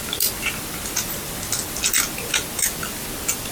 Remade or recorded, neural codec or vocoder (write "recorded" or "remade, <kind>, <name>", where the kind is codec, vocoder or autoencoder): recorded